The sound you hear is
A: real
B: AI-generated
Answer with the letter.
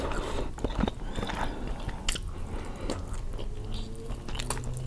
A